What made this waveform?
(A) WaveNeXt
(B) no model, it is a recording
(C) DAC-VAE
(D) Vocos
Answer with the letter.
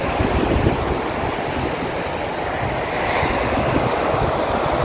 B